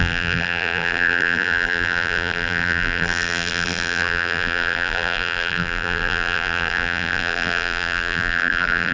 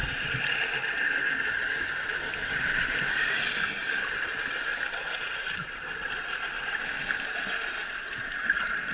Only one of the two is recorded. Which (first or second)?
second